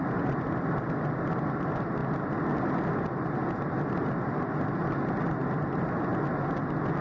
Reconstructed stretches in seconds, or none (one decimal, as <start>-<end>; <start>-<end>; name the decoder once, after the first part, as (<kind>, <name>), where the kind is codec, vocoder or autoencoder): none